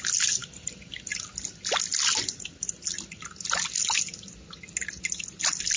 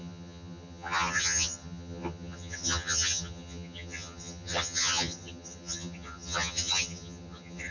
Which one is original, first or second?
first